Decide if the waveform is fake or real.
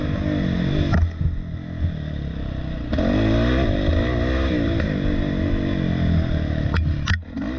real